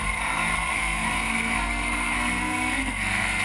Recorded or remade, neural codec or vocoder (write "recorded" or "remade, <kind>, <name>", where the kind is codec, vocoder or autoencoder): remade, codec, SNAC